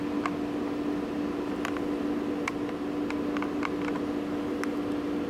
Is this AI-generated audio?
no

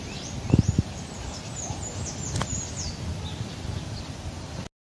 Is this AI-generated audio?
no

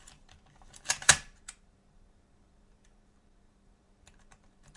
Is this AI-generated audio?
yes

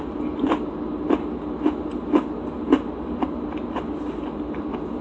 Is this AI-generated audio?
no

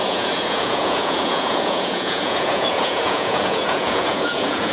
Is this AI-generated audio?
yes